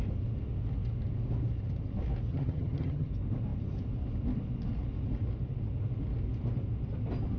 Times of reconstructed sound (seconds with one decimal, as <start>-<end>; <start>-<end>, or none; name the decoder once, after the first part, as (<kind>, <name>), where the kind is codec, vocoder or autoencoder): 2.3-3.1 (vocoder, HiFi-GAN)